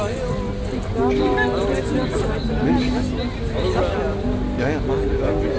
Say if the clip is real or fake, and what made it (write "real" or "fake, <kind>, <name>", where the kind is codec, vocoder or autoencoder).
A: real